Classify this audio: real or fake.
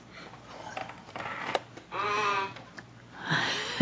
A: real